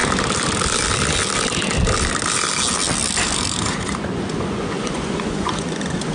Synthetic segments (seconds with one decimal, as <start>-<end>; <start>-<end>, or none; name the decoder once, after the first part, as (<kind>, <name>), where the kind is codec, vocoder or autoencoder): 3.7-6.1 (vocoder, Vocos)